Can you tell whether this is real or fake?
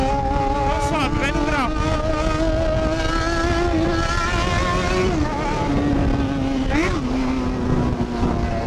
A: real